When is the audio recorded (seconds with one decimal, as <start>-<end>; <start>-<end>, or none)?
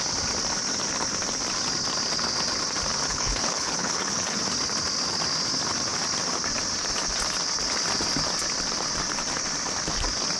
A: 0.0-3.1; 4.5-10.4